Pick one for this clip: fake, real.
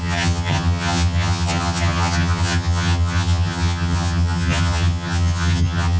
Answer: fake